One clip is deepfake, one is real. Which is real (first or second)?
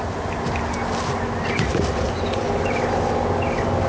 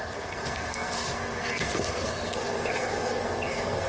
first